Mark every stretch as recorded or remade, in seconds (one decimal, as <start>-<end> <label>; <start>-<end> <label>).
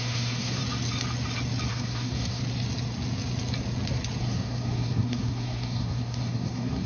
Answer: 0.0-0.6 remade; 0.6-1.7 recorded; 1.7-2.4 remade; 2.4-4.2 recorded; 4.2-6.9 remade